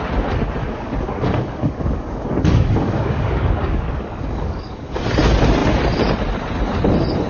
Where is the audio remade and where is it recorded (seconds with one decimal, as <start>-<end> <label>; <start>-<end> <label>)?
0.0-0.6 recorded; 0.6-5.0 remade; 5.0-7.3 recorded